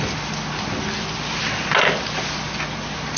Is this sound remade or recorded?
recorded